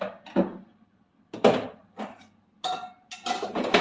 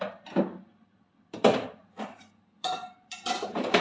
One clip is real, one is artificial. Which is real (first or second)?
first